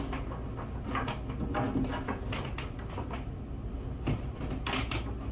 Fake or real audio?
real